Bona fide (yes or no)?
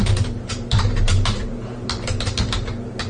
no